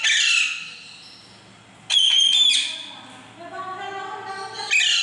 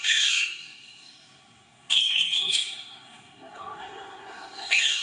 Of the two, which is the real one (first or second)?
first